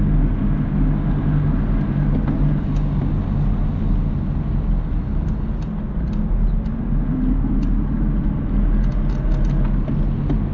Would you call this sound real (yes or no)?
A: yes